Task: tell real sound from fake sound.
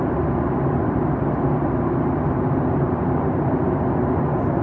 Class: real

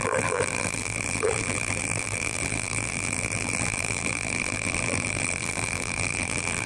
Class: fake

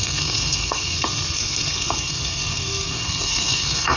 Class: fake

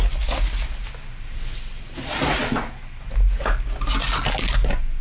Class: real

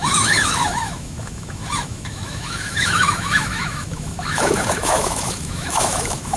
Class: fake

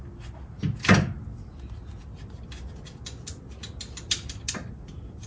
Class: real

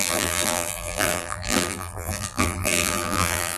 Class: fake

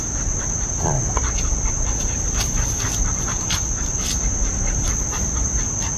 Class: fake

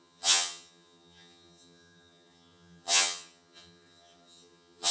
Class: fake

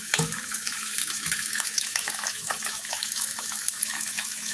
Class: fake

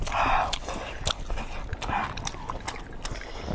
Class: real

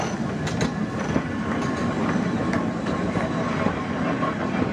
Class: real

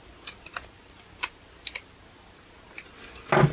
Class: real